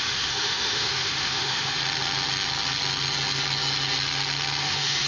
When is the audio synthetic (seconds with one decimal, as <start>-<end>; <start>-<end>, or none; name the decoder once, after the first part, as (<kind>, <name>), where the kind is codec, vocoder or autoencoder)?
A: 0.0-1.8 (autoencoder, DAC-VAE); 4.6-5.1